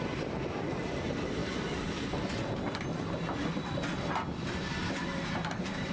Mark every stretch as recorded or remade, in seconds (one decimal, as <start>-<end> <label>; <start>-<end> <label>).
0.0-1.4 remade; 1.4-4.9 recorded; 4.9-5.9 remade